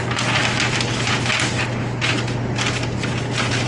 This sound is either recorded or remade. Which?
recorded